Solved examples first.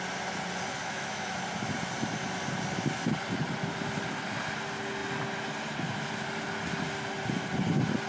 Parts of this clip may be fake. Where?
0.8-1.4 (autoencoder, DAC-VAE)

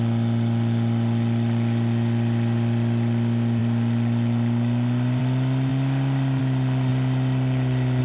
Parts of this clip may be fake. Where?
none

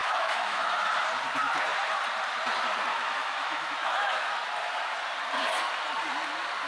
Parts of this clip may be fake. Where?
0.0-0.7 (autoencoder, DAC-VAE); 2.9-4.3

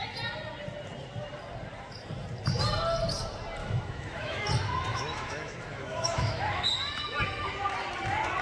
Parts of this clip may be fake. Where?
3.6-4.5 (autoencoder, DAC-VAE); 4.9-6.7